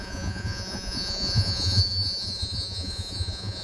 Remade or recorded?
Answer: remade